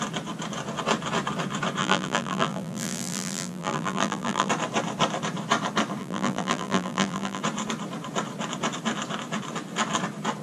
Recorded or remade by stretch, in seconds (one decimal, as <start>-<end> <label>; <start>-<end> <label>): 0.0-1.8 recorded; 1.8-4.5 remade; 4.5-6.0 recorded; 6.0-7.4 remade; 7.4-10.4 recorded